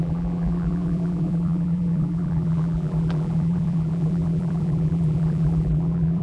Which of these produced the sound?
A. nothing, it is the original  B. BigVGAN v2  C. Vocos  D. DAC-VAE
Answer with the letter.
B